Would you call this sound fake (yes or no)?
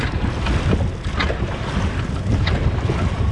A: no